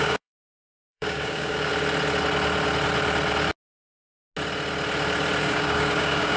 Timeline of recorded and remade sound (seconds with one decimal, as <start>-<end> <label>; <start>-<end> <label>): 0.0-1.7 remade; 1.7-5.4 recorded; 5.4-6.4 remade